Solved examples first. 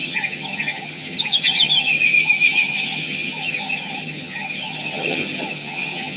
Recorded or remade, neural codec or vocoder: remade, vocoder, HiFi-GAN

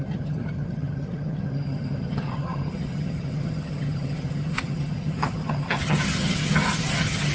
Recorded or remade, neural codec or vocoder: remade, vocoder, HiFi-GAN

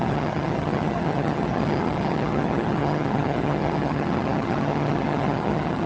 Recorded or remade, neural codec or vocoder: remade, vocoder, HiFi-GAN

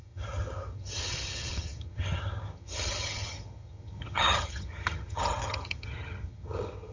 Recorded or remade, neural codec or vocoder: remade, vocoder, HiFi-GAN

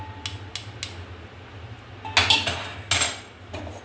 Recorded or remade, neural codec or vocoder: recorded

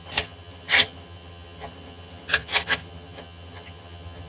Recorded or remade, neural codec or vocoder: remade, vocoder, HiFi-GAN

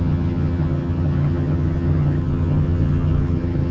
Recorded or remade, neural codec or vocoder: remade, vocoder, HiFi-GAN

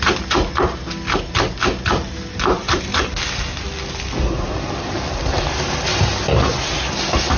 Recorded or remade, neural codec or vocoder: recorded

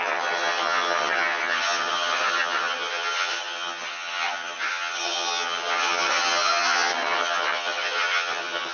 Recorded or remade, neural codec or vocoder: remade, vocoder, HiFi-GAN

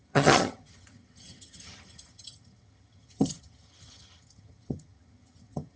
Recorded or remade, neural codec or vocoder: remade, vocoder, HiFi-GAN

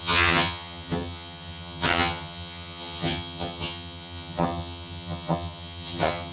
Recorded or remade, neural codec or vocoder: remade, vocoder, HiFi-GAN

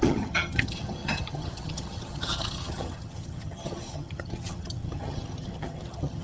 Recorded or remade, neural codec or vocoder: remade, vocoder, HiFi-GAN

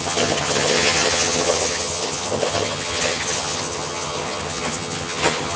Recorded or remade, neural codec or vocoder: remade, vocoder, HiFi-GAN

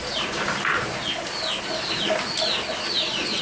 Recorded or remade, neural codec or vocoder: recorded